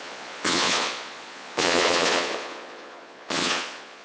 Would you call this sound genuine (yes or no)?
no